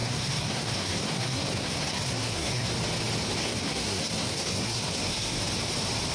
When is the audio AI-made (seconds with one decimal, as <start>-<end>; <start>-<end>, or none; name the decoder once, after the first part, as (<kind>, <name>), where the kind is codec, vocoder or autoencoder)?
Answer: 0.0-2.7 (codec, SNAC); 3.4-5.4